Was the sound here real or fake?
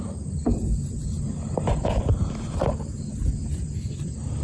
fake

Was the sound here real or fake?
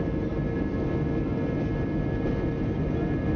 real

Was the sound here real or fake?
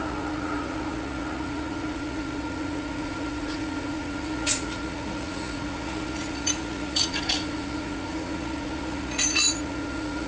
fake